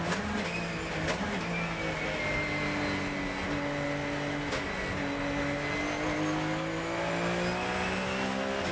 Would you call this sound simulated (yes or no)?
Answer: no